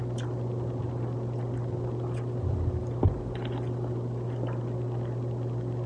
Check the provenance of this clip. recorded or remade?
recorded